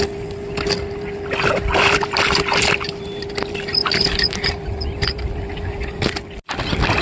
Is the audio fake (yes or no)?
no